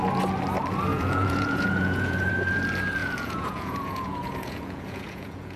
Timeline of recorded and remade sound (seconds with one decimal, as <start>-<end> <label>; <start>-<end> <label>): 0.0-0.9 recorded; 0.9-2.3 remade; 2.3-3.0 recorded; 3.0-5.6 remade